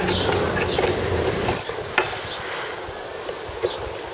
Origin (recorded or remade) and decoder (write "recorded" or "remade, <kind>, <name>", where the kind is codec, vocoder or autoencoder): recorded